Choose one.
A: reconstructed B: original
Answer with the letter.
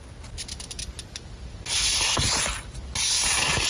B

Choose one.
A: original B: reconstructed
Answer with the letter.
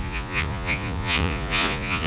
B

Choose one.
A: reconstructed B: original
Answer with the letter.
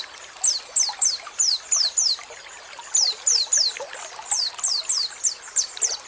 B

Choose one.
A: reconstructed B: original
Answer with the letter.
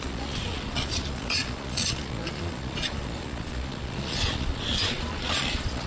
A